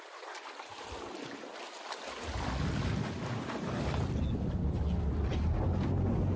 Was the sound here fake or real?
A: real